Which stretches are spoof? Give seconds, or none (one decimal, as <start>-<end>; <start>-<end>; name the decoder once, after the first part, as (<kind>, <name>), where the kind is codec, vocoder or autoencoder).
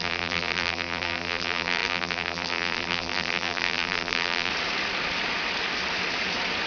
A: 0.0-4.5 (vocoder, BigVGAN v2)